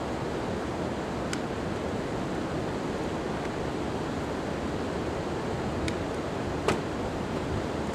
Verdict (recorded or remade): recorded